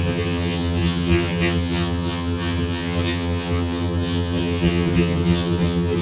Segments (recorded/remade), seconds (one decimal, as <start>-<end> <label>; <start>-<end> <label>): 0.0-6.0 remade